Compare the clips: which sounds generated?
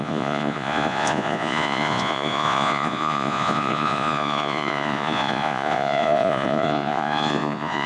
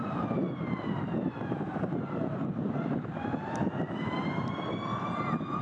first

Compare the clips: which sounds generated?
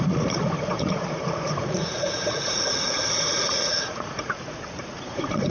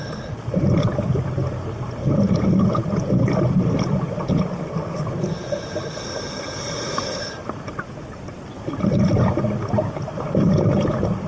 first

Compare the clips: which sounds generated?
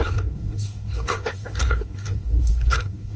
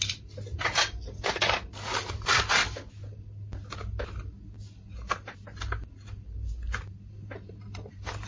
first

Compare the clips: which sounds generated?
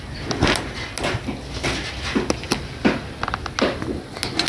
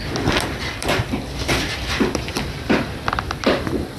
second